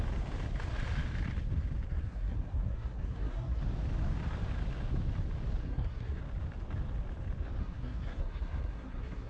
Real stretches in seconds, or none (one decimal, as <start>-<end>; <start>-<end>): 0.0-1.9; 3.6-5.6; 6.2-7.6